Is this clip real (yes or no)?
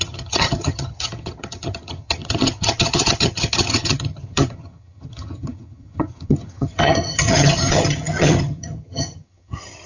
no